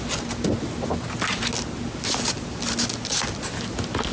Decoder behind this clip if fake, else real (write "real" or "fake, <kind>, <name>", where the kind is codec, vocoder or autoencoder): real